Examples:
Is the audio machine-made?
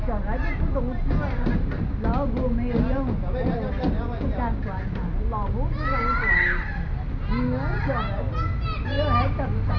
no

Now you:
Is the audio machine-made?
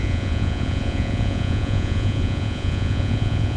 yes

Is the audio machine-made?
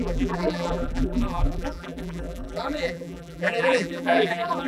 yes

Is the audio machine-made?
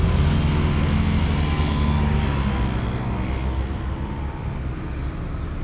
no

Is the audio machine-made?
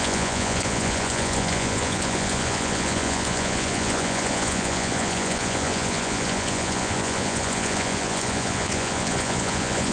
yes